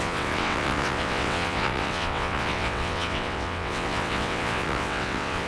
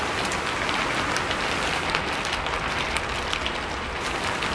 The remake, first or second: first